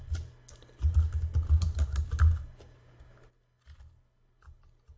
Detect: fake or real real